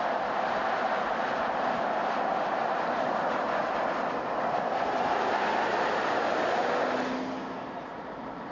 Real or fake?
real